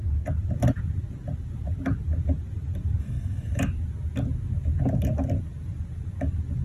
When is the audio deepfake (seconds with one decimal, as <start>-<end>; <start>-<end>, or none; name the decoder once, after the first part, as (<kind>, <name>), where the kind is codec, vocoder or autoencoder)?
3.0-3.6 (codec, SNAC)